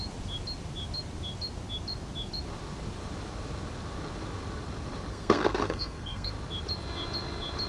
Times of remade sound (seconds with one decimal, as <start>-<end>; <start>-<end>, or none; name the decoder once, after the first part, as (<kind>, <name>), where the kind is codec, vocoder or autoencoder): 5.1-6.3 (codec, SNAC)